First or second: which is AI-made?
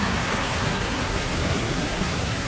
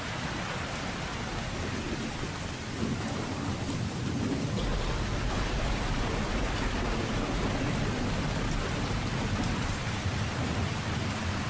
first